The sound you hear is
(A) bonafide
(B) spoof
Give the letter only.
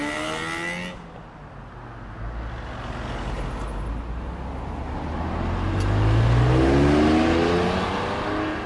A